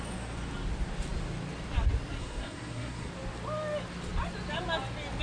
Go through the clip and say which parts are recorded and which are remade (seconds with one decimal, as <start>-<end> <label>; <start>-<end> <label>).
0.0-2.2 recorded; 2.2-3.1 remade; 3.1-5.2 recorded